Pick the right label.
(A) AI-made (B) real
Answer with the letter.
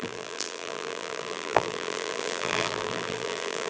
A